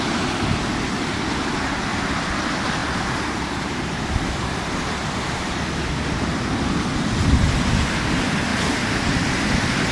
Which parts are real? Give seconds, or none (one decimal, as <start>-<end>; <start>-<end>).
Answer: 0.0-1.9; 2.4-2.8; 6.0-8.5; 9.5-9.9